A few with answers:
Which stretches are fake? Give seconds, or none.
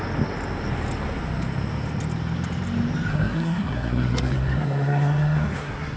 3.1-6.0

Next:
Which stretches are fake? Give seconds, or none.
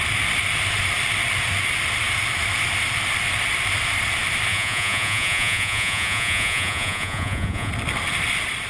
4.5-7.7